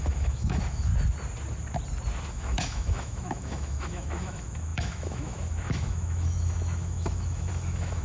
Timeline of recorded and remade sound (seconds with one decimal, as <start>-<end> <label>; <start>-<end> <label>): 0.0-0.9 remade; 0.9-2.3 recorded; 2.3-8.0 remade